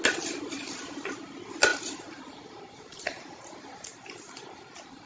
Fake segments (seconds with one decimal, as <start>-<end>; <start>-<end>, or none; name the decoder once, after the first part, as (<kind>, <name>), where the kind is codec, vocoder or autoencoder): 1.7-5.1 (vocoder, BigVGAN v2)